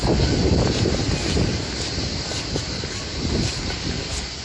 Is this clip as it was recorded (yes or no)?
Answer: yes